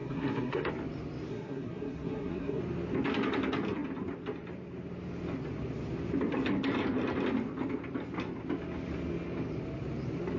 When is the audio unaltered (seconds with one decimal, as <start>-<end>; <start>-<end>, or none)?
0.7-1.3; 2.6-10.4